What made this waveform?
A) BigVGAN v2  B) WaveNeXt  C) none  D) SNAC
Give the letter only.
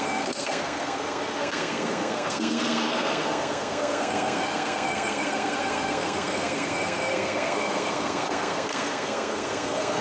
D